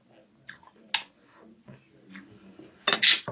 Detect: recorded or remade recorded